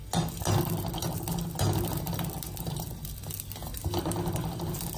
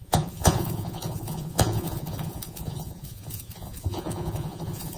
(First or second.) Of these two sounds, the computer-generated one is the second